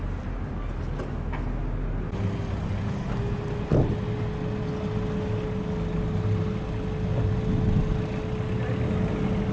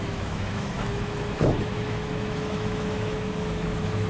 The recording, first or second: first